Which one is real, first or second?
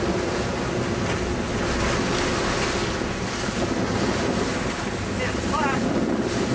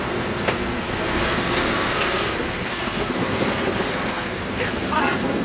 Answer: first